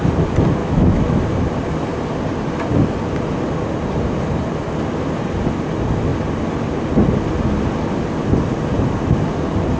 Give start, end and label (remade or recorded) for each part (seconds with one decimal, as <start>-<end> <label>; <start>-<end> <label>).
0.0-0.6 recorded; 0.6-1.2 remade; 1.2-9.8 recorded